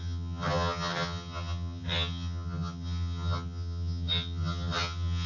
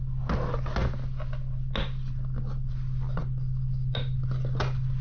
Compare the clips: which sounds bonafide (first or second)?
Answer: second